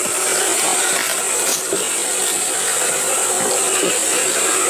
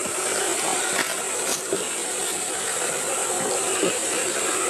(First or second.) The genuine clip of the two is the first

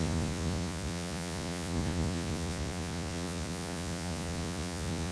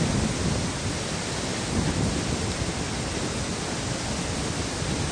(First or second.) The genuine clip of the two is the second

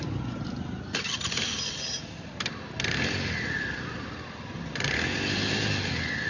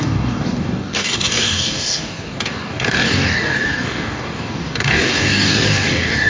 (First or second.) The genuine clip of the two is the first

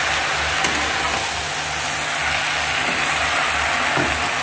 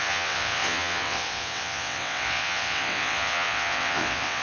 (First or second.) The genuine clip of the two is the first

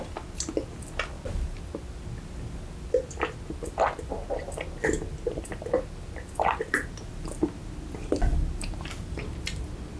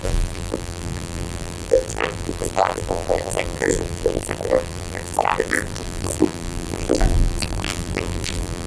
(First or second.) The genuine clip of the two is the first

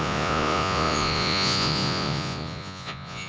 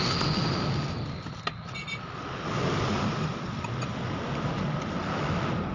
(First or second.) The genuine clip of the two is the second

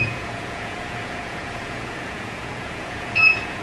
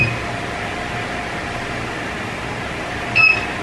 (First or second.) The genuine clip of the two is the second